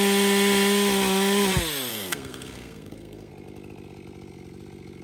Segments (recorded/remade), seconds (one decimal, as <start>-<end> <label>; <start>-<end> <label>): 0.0-1.9 recorded; 1.9-3.3 remade; 3.3-5.0 recorded